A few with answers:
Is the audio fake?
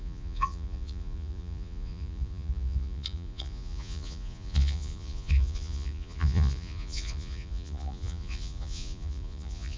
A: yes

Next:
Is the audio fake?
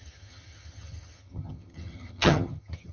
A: yes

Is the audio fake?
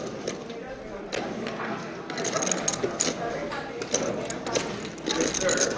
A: no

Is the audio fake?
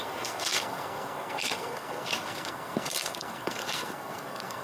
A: yes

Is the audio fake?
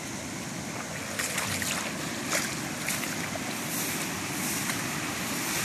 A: no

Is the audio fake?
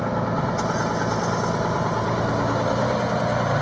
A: no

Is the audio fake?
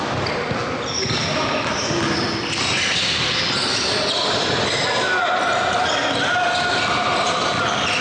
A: no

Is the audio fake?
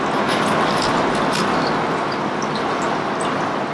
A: no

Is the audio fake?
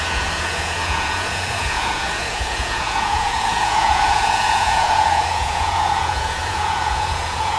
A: yes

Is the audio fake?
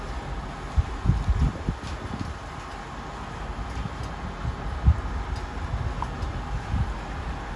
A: no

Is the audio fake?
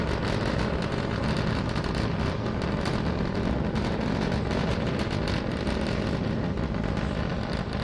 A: yes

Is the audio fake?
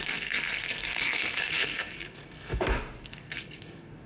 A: yes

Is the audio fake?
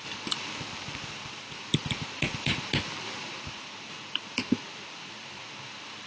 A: yes